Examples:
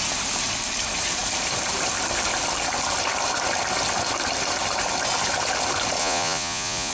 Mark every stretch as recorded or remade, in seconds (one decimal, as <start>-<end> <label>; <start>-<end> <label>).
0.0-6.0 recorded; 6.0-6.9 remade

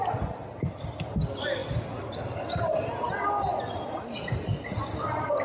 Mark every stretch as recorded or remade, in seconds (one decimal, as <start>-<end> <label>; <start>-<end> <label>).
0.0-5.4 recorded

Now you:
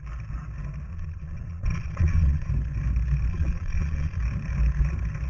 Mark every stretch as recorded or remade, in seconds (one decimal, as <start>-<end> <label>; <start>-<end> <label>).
0.0-0.9 recorded; 0.9-2.5 remade; 2.5-3.3 recorded; 3.3-4.2 remade; 4.2-5.3 recorded